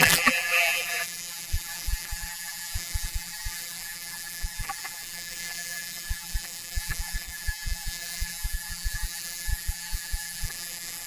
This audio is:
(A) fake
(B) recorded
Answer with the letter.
A